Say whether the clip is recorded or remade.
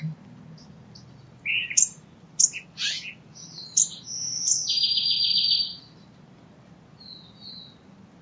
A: recorded